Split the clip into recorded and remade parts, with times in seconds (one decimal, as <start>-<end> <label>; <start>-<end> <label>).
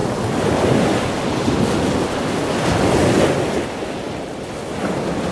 0.0-5.3 recorded